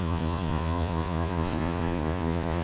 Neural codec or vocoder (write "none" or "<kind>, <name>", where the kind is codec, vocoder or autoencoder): vocoder, Vocos